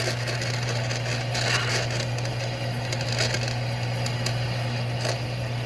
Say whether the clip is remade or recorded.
recorded